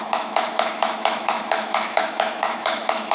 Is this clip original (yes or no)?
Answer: no